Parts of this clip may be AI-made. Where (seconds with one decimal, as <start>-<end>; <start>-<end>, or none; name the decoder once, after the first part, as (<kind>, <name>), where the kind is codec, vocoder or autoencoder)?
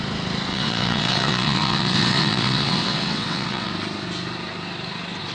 0.5-3.7 (vocoder, WaveNeXt)